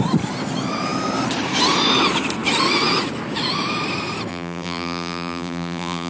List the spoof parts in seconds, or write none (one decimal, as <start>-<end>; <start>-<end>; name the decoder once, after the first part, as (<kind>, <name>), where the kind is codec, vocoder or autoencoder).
4.3-6.1 (vocoder, BigVGAN v2)